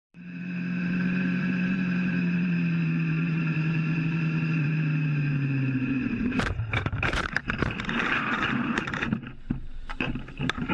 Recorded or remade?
remade